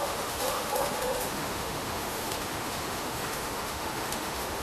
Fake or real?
fake